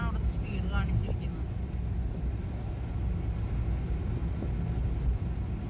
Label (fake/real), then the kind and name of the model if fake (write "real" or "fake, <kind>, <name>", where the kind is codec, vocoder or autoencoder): real